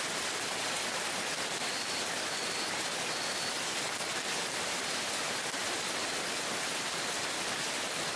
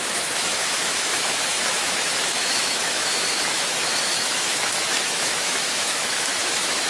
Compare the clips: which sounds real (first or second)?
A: first